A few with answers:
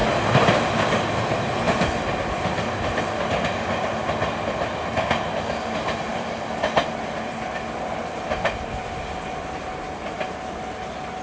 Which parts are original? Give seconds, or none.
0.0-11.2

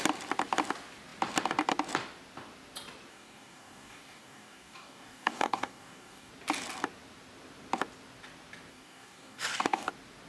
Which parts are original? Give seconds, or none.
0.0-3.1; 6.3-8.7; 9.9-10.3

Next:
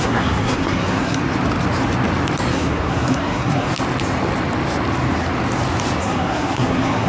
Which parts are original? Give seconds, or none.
1.2-2.5; 3.7-6.0

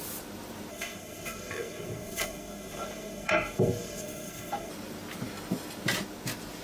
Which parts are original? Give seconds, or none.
0.0-0.7; 4.7-6.6

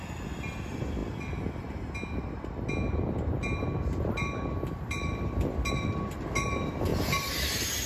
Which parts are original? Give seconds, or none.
0.0-7.9

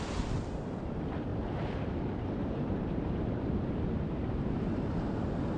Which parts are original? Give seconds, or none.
0.0-1.3; 1.9-2.4; 5.1-5.6

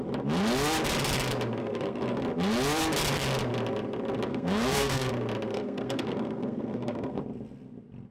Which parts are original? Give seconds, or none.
0.0-1.6; 2.2-4.3; 5.1-5.5; 7.2-8.1

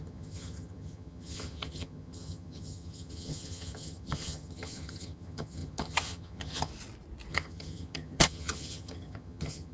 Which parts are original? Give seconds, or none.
6.7-7.3